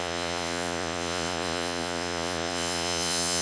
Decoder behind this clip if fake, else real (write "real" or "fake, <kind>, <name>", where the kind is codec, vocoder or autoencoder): fake, vocoder, Vocos